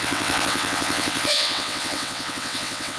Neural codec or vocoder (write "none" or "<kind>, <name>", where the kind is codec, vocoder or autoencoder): vocoder, WaveNeXt